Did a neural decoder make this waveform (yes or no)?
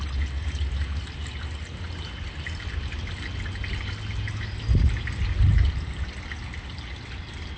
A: no